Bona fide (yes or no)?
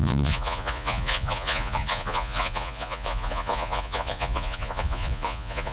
no